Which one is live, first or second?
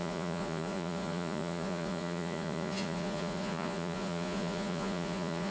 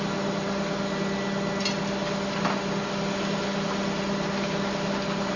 second